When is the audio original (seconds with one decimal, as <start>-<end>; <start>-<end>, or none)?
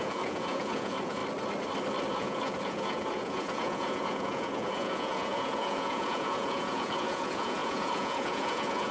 1.2-2.1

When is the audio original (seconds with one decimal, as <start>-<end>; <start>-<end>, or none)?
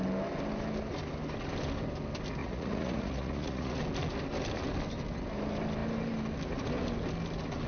0.0-2.4; 3.8-7.7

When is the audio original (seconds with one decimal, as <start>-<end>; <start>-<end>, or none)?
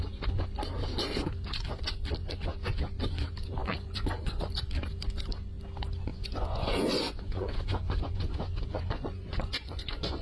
0.0-3.6; 4.5-6.1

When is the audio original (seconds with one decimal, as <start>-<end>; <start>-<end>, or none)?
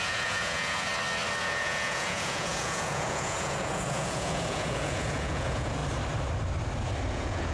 0.9-1.4; 5.8-7.1